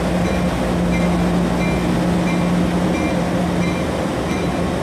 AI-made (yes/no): no